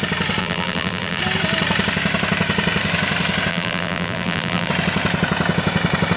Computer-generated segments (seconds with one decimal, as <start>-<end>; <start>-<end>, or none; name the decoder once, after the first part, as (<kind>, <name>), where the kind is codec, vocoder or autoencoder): 0.4-1.2 (vocoder, BigVGAN v2); 3.5-4.7